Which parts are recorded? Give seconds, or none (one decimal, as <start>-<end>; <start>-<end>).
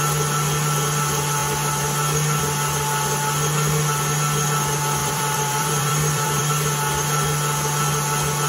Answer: 0.0-5.0; 6.5-8.5